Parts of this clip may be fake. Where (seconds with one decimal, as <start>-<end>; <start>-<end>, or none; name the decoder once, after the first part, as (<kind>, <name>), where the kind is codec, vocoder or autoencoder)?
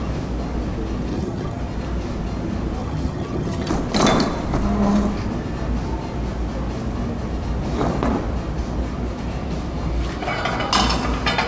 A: 1.1-1.6 (vocoder, HiFi-GAN); 2.8-3.7